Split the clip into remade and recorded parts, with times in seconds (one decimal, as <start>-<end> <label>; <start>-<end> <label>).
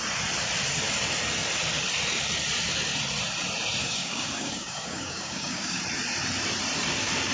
0.0-3.8 recorded; 3.8-5.8 remade; 5.8-7.3 recorded